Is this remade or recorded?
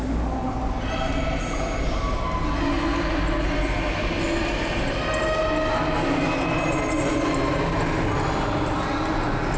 recorded